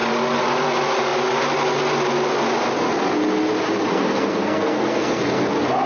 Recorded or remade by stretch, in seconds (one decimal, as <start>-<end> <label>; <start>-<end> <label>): 0.0-3.9 recorded; 3.9-5.5 remade; 5.5-5.9 recorded